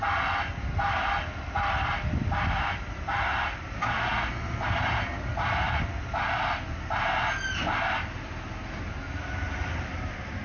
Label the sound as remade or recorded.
recorded